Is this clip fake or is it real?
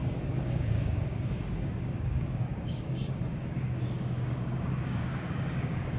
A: fake